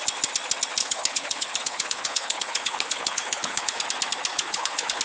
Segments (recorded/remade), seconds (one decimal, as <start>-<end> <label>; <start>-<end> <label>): 0.0-0.8 recorded; 0.8-3.8 remade; 3.8-4.3 recorded; 4.3-5.0 remade